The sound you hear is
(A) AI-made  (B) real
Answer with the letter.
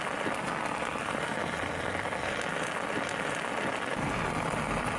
B